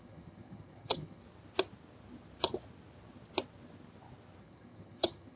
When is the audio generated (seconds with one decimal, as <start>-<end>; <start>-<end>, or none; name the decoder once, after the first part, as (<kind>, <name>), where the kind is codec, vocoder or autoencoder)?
0.0-1.2 (vocoder, HiFi-GAN); 4.4-5.4